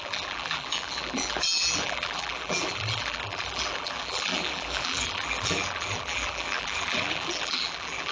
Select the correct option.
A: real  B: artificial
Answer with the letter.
B